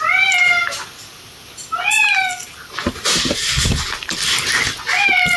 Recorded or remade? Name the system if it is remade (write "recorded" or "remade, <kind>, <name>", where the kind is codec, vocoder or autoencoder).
recorded